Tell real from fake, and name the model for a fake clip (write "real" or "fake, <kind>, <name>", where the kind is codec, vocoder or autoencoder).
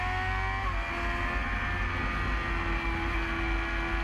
real